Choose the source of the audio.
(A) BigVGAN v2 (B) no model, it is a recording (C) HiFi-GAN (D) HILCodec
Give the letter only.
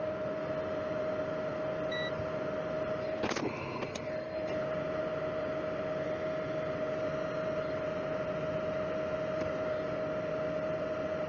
B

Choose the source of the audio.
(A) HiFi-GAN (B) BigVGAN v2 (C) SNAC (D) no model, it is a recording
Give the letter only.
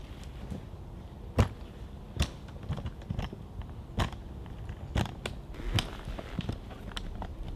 D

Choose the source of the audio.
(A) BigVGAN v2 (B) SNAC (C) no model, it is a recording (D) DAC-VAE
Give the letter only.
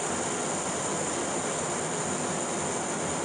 C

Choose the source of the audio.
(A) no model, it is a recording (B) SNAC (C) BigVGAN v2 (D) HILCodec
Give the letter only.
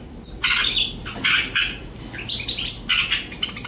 A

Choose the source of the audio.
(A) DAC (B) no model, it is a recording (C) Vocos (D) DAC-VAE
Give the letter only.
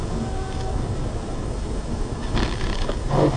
A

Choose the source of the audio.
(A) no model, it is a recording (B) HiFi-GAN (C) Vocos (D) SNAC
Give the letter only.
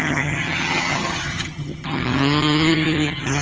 B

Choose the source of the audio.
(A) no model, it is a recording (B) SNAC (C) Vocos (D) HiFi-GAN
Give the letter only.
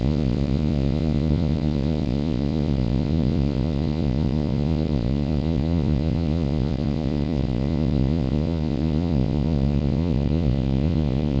C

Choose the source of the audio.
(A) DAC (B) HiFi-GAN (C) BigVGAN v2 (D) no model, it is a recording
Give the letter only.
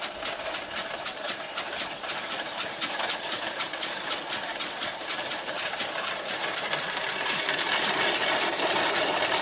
C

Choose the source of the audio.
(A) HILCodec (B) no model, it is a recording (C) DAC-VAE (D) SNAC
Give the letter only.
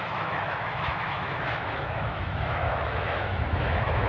C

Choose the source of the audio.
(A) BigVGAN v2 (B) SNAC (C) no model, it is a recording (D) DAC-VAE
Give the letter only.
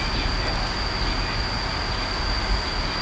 C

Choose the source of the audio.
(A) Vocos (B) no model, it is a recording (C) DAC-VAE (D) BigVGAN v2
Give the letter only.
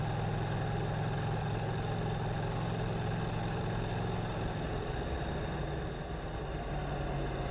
B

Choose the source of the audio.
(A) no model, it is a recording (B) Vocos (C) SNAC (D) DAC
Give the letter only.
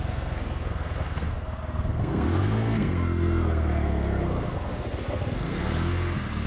C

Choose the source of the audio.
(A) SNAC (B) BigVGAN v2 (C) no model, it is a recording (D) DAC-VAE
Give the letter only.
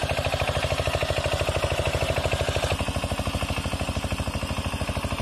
C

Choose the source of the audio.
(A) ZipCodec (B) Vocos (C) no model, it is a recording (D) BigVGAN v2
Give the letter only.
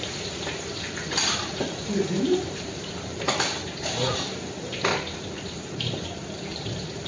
D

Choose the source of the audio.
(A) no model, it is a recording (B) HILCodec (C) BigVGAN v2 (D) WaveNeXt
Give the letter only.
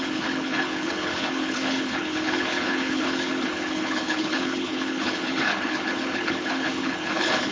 B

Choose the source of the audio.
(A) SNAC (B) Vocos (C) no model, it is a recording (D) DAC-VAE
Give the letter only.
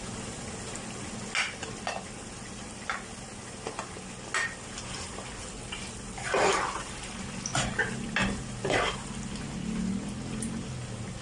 C